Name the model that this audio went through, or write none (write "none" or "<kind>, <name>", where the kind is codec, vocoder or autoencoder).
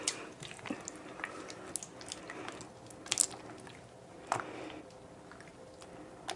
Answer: none